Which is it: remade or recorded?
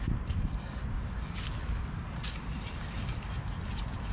recorded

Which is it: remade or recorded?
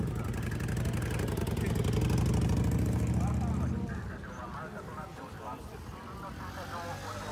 recorded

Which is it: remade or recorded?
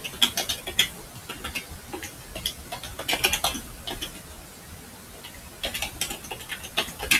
recorded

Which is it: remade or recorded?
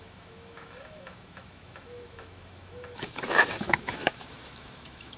remade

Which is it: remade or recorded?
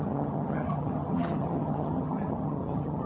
remade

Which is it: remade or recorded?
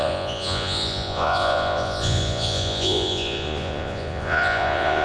remade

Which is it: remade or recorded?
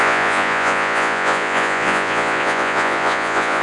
remade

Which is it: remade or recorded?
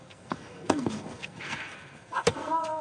remade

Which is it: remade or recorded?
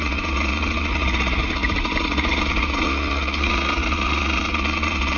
remade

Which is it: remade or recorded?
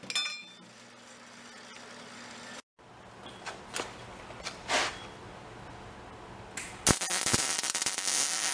recorded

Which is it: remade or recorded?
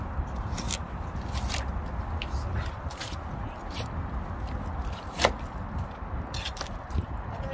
recorded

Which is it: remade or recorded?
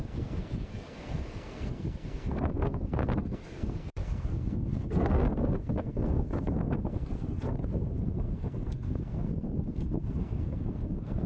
remade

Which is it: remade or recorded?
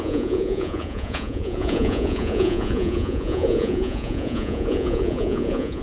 remade